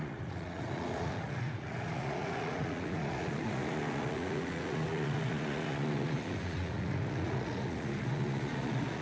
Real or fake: fake